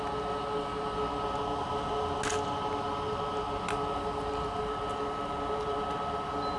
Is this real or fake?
real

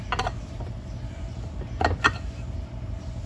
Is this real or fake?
real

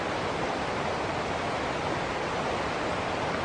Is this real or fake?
real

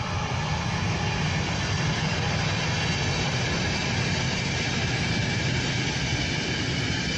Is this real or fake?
real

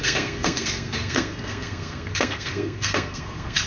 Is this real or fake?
fake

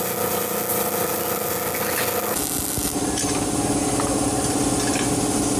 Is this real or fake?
real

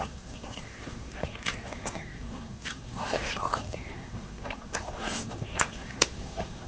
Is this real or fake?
fake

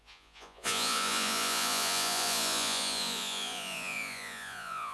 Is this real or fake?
fake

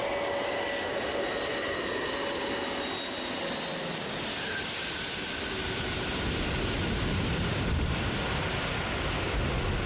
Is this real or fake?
real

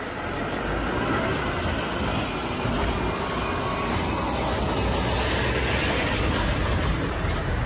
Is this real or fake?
real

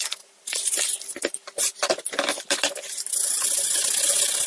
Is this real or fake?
real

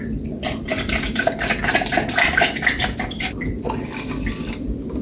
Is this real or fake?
real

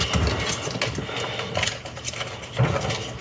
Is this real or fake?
real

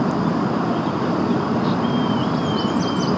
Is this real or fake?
real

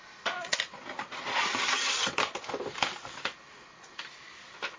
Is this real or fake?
real